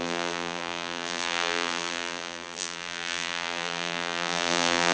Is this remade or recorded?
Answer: remade